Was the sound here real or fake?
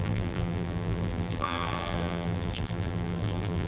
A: fake